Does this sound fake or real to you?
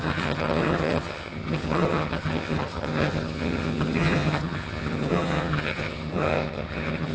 fake